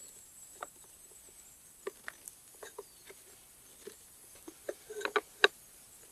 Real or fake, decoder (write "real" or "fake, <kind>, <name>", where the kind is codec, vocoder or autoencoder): real